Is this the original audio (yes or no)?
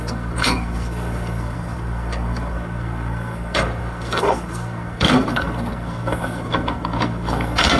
no